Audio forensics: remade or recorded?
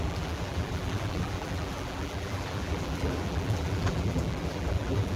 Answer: remade